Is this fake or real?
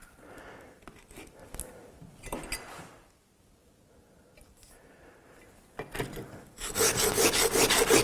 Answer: real